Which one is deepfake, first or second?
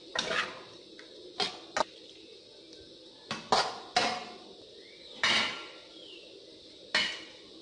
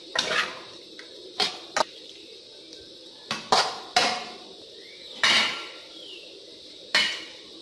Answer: second